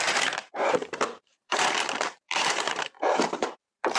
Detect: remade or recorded remade